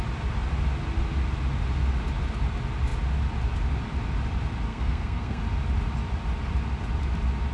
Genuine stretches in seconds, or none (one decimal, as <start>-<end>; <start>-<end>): 0.0-4.7; 5.4-7.5